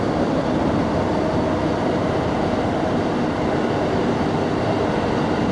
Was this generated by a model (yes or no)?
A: no